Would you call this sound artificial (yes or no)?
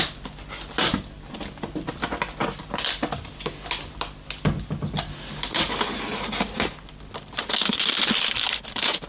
no